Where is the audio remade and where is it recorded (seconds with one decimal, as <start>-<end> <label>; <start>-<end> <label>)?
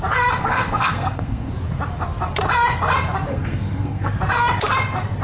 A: 0.0-0.4 recorded; 0.4-1.5 remade; 1.5-3.3 recorded; 3.3-4.1 remade; 4.1-5.2 recorded